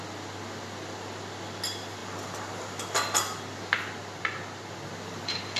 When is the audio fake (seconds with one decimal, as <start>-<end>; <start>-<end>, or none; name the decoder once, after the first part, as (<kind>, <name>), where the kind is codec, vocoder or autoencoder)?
none